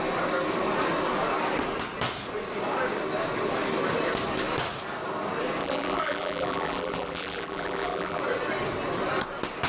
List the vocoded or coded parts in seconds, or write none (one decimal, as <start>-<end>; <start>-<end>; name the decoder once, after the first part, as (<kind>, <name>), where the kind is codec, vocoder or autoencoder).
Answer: 5.6-8.2 (vocoder, BigVGAN v2)